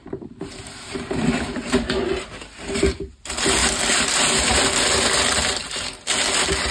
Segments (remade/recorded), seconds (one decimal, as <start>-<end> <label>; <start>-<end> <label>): 0.0-2.0 remade; 2.0-3.6 recorded; 3.6-4.6 remade; 4.6-6.7 recorded